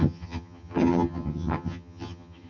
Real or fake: fake